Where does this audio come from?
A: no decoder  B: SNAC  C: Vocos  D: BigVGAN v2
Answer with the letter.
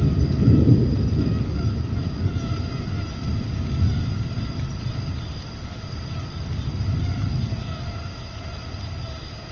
A